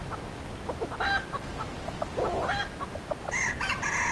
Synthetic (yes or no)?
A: no